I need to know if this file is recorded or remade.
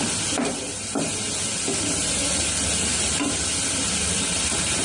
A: recorded